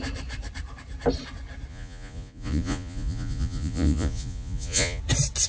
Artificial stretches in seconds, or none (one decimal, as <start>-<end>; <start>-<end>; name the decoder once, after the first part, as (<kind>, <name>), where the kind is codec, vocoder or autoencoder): 1.7-5.0 (vocoder, Vocos)